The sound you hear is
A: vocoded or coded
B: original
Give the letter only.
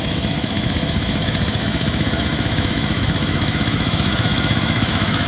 A